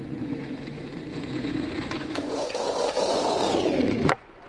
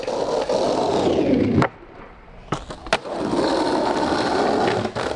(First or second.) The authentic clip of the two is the second